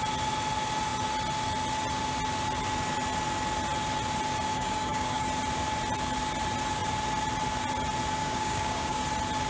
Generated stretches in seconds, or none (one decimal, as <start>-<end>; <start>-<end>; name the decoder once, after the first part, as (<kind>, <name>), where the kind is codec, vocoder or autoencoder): 4.5-5.3 (codec, DAC); 8.2-9.0